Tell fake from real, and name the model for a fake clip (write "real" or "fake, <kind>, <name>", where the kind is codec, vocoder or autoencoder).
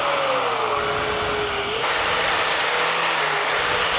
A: real